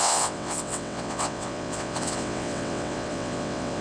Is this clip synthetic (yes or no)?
yes